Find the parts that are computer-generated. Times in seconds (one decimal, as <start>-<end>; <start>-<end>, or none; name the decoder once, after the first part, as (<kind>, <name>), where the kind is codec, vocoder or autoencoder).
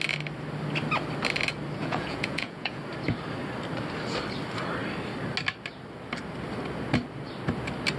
1.8-2.8 (vocoder, Vocos)